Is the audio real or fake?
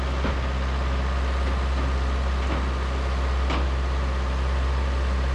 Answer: real